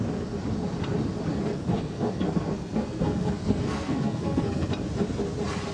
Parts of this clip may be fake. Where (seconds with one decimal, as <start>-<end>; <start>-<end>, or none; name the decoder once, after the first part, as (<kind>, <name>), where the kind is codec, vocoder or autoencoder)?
1.3-4.7 (codec, SNAC)